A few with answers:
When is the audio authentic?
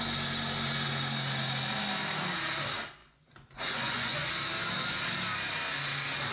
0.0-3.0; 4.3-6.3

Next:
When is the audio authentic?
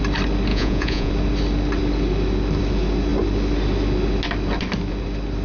0.0-0.5; 1.1-5.4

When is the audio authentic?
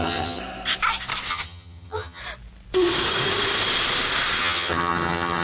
0.4-1.3; 2.2-4.4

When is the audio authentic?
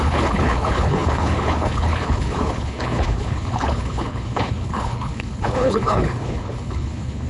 none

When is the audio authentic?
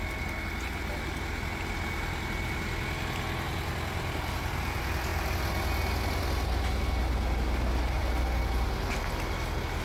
0.0-9.8